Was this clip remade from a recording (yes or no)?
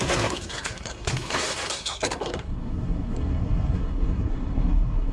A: yes